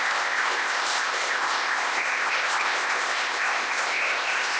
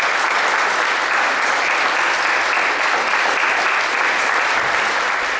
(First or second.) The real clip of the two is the second